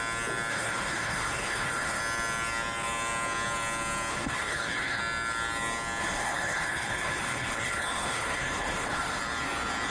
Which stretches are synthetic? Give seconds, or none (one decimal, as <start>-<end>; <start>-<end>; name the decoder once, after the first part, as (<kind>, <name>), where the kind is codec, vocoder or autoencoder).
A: 0.5-2.0 (codec, HILCodec); 4.1-5.0; 6.0-9.2